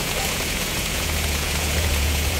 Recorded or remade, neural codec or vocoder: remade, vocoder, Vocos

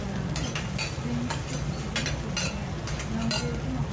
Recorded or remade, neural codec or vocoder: recorded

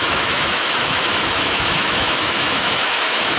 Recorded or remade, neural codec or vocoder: remade, autoencoder, DAC-VAE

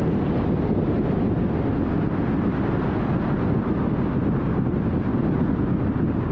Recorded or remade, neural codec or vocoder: recorded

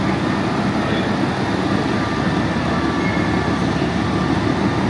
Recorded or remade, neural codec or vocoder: recorded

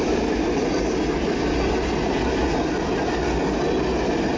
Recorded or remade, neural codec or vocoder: recorded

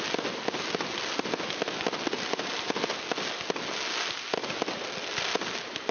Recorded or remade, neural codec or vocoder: recorded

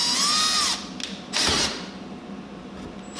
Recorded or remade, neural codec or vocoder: recorded